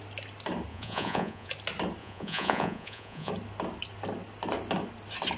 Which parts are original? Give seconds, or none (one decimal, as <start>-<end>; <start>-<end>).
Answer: 0.0-0.7; 1.5-2.0; 3.3-5.4